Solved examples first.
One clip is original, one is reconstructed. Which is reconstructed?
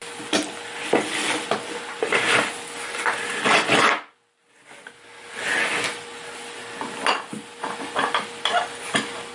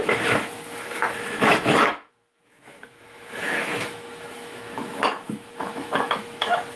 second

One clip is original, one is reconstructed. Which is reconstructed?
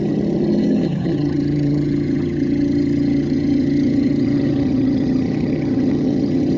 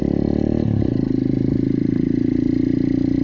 first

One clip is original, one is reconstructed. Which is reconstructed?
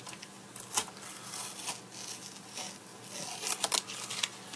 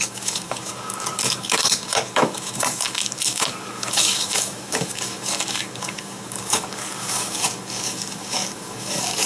second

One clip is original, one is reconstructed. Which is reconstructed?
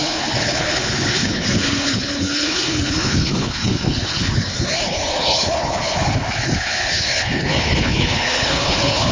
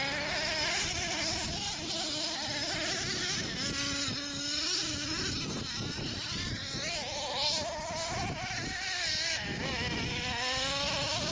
first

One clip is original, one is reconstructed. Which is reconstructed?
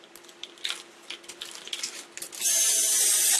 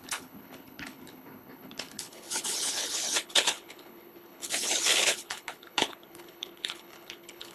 second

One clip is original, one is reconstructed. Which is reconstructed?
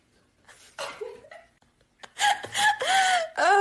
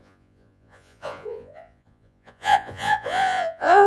second